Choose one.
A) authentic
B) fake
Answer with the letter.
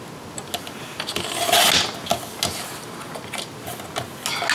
A